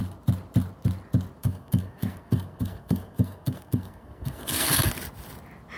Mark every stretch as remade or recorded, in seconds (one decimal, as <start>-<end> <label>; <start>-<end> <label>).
0.0-1.4 recorded; 1.4-4.9 remade; 4.9-5.8 recorded